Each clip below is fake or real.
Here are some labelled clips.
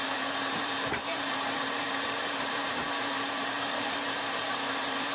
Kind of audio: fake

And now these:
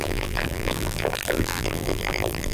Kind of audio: fake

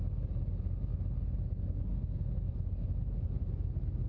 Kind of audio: real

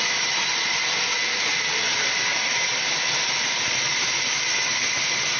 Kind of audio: fake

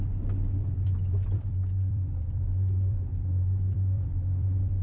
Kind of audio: fake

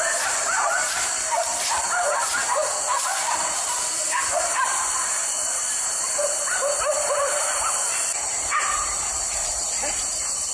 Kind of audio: fake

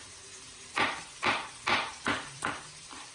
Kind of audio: fake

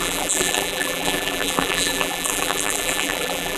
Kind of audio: fake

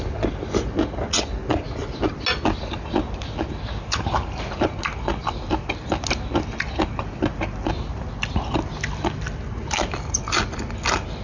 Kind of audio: real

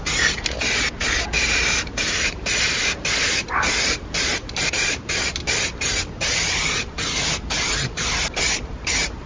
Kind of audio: fake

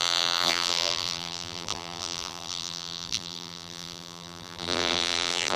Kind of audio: fake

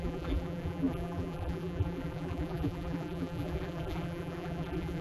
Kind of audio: fake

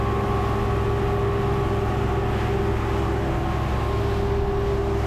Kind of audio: real